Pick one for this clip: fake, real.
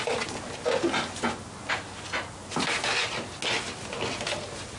real